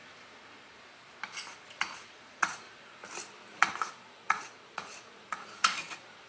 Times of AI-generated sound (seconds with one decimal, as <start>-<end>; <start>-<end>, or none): 0.0-0.8; 1.5-3.0; 3.5-6.3